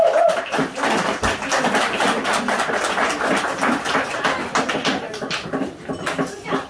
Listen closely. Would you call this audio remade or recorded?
recorded